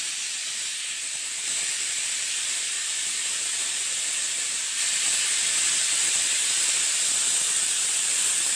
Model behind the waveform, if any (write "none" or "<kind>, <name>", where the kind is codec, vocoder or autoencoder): vocoder, BigVGAN v2